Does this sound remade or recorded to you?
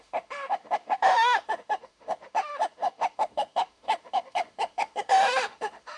remade